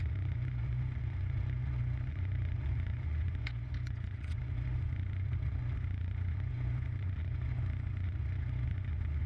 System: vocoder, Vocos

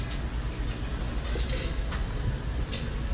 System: none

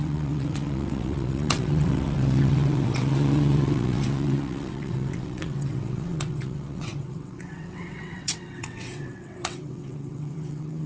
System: vocoder, WaveNeXt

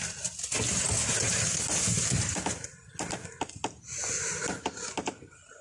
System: none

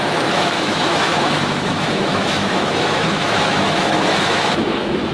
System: autoencoder, DAC-VAE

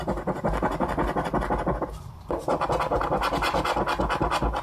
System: none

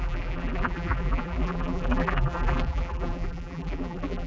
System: vocoder, BigVGAN v2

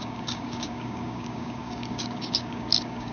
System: codec, DAC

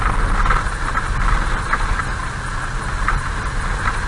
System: none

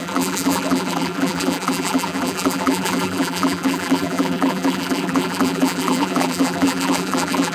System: vocoder, BigVGAN v2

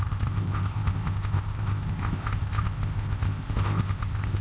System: codec, ZipCodec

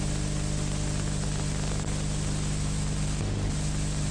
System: none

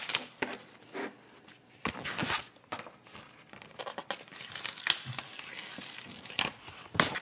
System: none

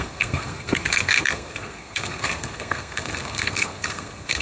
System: codec, SNAC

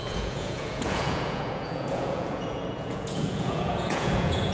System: vocoder, Vocos